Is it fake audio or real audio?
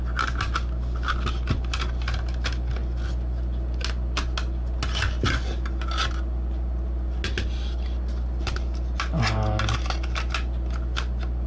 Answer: real